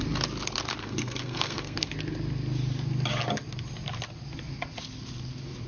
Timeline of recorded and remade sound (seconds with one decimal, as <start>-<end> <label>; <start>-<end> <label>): 0.0-0.8 recorded; 0.8-1.9 remade; 1.9-5.7 recorded